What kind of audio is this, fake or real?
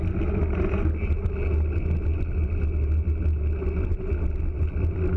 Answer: real